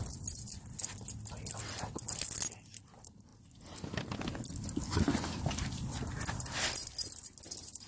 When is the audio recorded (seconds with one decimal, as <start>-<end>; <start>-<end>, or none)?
0.0-7.9

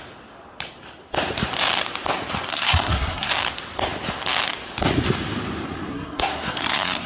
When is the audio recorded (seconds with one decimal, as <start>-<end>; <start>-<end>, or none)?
0.0-2.5; 3.3-5.9